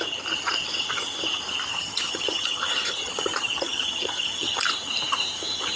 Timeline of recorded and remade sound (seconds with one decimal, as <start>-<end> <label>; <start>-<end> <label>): 0.0-1.7 recorded; 1.7-4.6 remade; 4.6-5.8 recorded